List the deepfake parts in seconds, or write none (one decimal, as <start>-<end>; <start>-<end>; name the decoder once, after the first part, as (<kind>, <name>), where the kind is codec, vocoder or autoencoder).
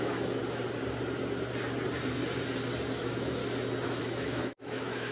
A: 0.0-0.4 (autoencoder, DAC-VAE); 3.0-3.4; 4.0-5.1